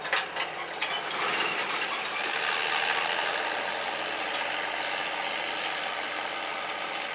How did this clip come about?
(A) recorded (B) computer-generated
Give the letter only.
A